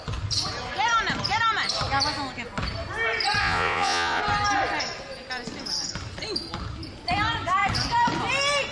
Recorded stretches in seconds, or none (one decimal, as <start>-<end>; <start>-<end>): 0.0-3.4; 4.2-8.7